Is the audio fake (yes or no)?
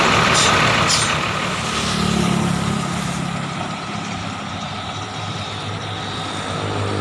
no